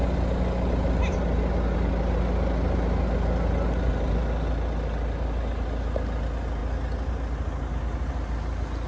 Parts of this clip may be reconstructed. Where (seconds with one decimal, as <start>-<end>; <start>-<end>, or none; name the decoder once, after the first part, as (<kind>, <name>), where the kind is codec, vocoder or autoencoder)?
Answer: none